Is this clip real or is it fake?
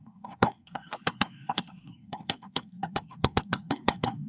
fake